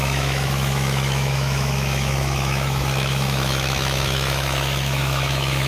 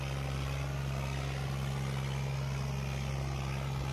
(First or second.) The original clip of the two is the second